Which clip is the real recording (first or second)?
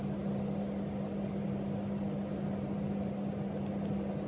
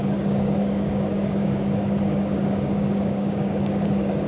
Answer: first